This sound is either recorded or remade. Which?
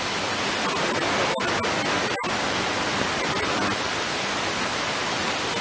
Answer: recorded